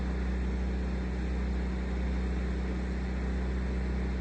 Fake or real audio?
real